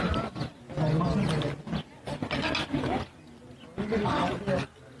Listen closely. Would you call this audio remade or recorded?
recorded